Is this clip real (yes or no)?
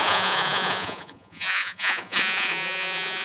no